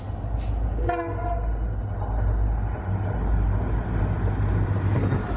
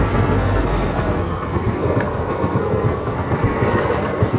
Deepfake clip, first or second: second